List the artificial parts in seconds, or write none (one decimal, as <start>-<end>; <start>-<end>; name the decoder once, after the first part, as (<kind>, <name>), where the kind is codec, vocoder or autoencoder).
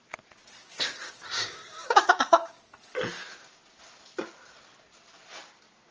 0.6-2.6 (codec, DAC)